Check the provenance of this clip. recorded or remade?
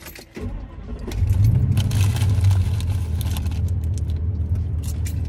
recorded